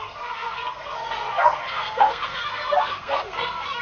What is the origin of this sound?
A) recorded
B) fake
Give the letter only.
B